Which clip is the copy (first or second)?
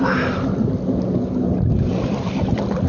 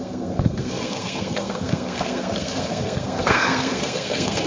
second